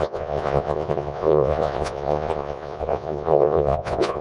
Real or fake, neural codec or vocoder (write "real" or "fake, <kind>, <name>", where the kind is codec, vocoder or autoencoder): fake, vocoder, Vocos